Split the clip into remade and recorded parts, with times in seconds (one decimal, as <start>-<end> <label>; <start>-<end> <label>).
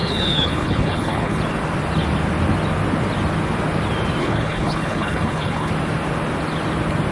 0.0-1.4 remade; 1.4-4.2 recorded; 4.2-5.7 remade; 5.7-7.1 recorded